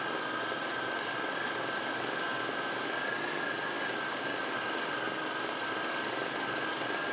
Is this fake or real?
real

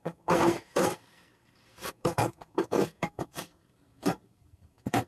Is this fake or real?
fake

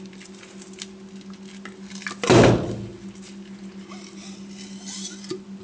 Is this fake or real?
real